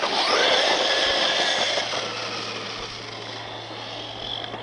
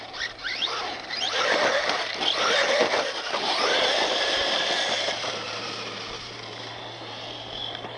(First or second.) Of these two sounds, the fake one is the second